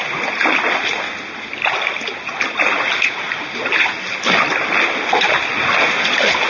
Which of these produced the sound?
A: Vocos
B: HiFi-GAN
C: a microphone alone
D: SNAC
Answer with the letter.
C